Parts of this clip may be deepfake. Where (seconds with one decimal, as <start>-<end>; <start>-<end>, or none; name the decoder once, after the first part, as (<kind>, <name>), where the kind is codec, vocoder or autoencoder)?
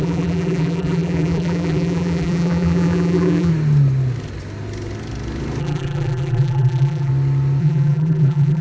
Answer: 0.0-3.5 (vocoder, BigVGAN v2); 5.6-7.1; 7.6-8.6